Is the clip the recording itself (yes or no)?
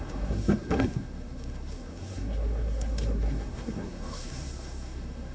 no